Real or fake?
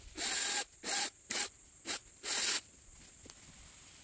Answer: real